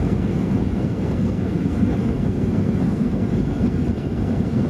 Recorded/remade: remade